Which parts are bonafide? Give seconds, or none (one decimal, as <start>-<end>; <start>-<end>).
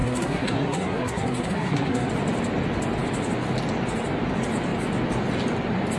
2.1-6.0